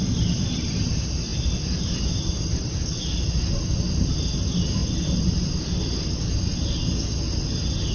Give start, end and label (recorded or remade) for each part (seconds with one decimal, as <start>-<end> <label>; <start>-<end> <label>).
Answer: 0.0-7.9 recorded